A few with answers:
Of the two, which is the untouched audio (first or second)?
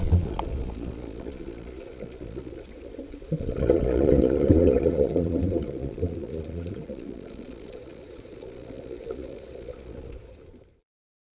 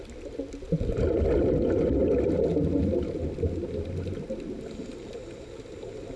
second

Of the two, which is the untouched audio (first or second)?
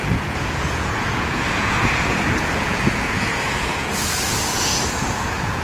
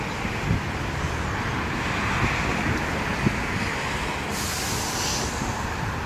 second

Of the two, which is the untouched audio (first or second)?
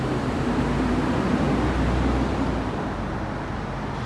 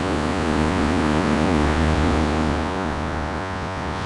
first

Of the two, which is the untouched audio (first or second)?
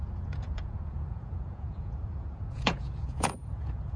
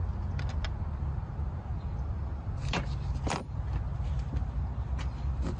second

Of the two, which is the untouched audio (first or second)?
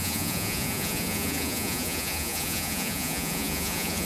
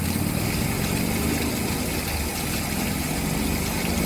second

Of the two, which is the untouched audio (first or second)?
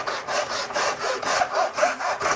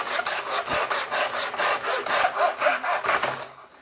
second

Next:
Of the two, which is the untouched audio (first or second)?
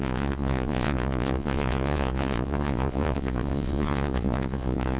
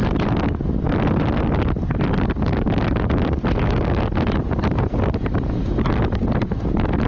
second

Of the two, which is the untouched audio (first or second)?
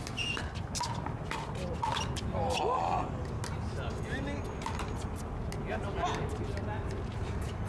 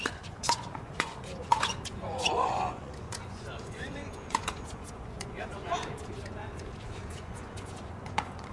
first